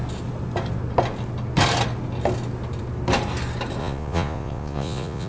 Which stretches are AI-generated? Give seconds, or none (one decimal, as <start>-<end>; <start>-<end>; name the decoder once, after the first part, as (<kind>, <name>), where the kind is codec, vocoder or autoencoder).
3.8-5.3 (vocoder, Vocos)